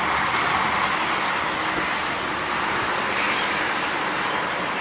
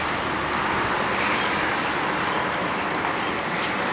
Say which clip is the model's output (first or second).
second